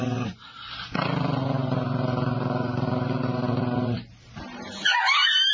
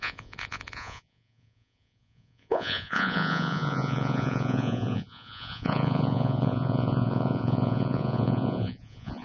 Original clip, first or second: first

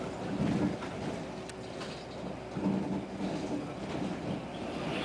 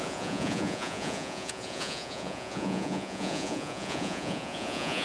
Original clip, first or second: first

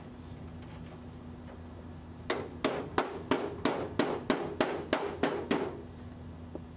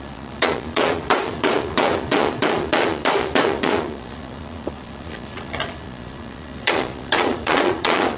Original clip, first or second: first